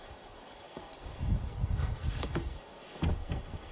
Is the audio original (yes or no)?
no